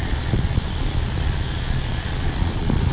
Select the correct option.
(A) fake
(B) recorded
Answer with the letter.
A